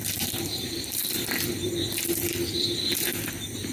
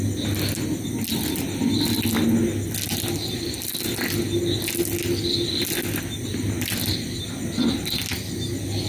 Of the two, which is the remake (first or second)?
first